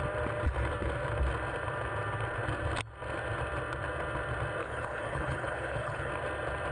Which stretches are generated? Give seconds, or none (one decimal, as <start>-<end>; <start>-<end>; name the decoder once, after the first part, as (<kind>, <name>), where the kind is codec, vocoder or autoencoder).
4.6-6.1 (codec, HILCodec)